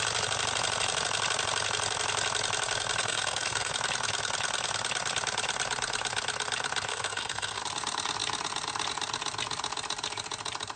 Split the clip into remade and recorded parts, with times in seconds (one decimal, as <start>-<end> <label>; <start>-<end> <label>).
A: 0.0-3.0 recorded; 3.0-3.7 remade; 3.7-6.9 recorded; 6.9-7.6 remade; 7.6-10.8 recorded